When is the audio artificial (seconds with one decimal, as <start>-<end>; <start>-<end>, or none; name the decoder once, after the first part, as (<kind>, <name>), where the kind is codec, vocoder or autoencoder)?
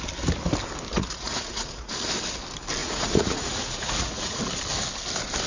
0.9-1.9 (vocoder, Vocos); 2.8-4.4